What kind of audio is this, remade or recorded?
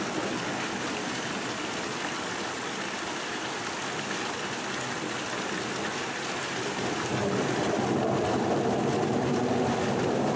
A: recorded